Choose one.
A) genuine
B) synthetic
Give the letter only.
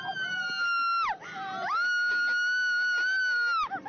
A